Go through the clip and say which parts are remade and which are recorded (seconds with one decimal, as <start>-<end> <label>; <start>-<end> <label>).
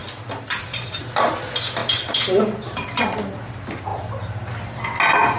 0.0-1.0 remade; 1.0-1.8 recorded; 1.8-3.0 remade; 3.0-3.9 recorded; 3.9-4.5 remade; 4.5-5.4 recorded